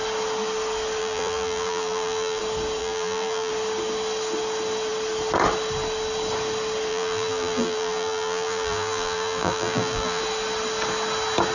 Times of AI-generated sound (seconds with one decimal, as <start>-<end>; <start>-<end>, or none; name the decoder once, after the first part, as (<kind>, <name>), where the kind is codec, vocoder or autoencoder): 1.0-2.4 (vocoder, BigVGAN v2); 2.8-3.5; 6.9-10.2